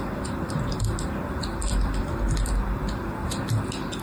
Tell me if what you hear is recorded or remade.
recorded